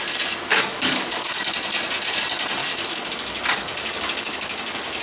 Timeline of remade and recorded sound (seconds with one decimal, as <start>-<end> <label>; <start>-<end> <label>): 0.0-0.5 recorded; 0.5-1.3 remade; 1.3-2.6 recorded; 2.6-5.0 remade